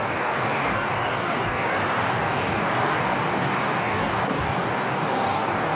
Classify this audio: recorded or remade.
remade